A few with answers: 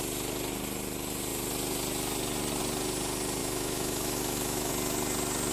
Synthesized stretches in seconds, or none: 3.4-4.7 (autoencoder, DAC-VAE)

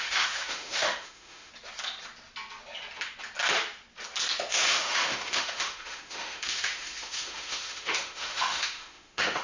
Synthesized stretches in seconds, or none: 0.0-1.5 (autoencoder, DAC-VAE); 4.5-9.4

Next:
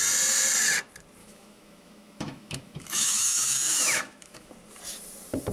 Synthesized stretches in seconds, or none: 1.2-4.5 (autoencoder, DAC-VAE)